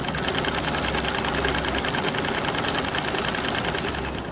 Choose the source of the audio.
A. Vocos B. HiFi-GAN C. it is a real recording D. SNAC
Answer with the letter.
C